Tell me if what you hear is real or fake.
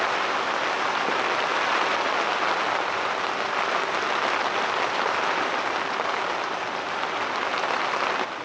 real